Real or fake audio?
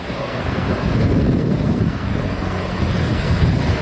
fake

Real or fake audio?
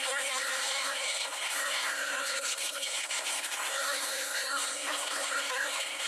fake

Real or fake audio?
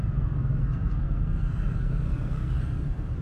fake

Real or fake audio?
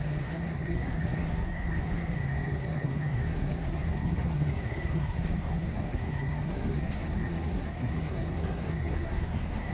fake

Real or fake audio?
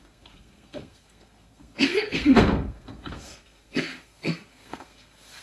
fake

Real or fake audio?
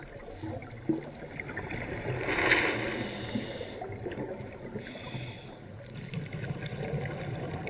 real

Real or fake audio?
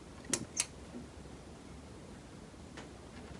real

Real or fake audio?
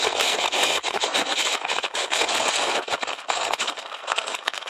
fake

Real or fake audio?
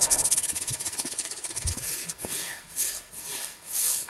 fake